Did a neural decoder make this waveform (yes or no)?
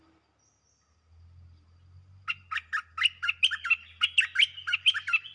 no